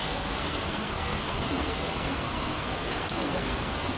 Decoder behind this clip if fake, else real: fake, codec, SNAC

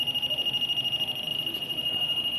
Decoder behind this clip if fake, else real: real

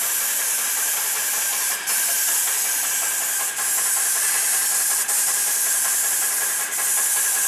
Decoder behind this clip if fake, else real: real